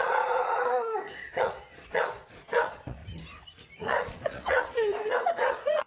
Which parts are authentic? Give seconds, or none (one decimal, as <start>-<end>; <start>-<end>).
3.0-3.8